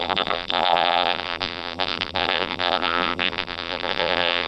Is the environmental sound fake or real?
fake